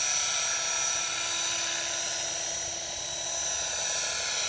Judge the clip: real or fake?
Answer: real